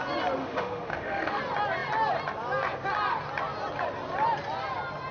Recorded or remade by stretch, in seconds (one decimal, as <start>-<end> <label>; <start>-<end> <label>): 0.0-0.4 recorded; 0.4-1.4 remade; 1.4-5.1 recorded